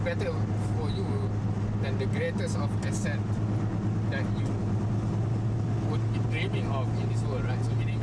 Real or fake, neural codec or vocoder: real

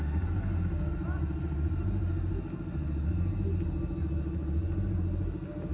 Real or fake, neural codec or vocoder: real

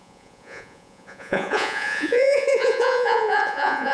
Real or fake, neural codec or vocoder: fake, vocoder, Vocos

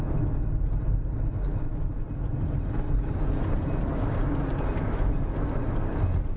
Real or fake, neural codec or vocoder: real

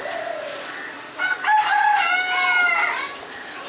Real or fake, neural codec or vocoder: real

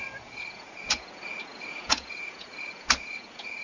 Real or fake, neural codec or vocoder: fake, vocoder, Vocos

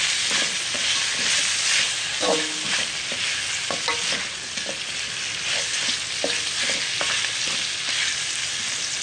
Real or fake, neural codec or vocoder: real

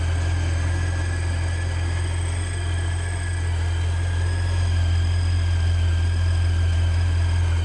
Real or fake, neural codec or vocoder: real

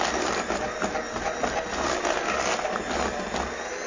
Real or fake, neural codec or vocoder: real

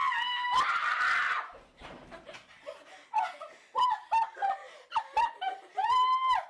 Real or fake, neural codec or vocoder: real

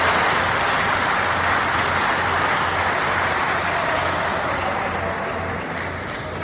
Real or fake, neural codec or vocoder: real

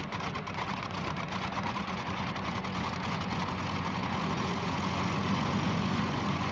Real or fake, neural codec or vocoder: fake, vocoder, Vocos